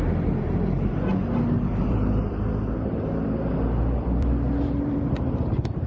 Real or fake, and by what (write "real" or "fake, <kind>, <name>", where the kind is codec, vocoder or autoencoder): fake, vocoder, BigVGAN v2